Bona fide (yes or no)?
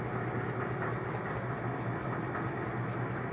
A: yes